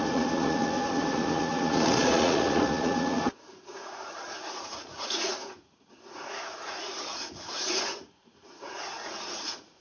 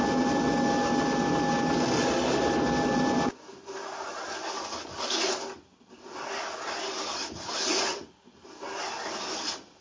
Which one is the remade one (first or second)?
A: first